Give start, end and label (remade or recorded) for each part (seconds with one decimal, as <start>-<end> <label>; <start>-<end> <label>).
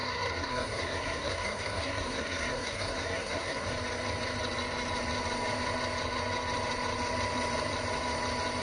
0.0-3.7 remade; 3.7-8.6 recorded